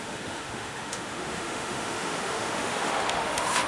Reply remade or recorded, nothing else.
remade